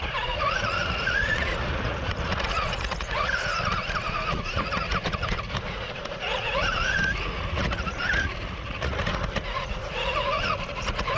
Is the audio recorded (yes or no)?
no